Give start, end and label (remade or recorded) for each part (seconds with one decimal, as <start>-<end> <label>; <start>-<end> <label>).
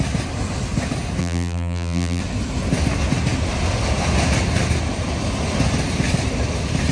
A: 0.0-1.2 recorded; 1.2-2.2 remade; 2.2-6.9 recorded